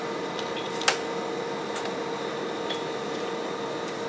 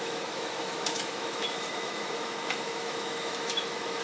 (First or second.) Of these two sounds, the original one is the first